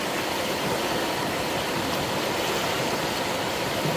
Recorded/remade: recorded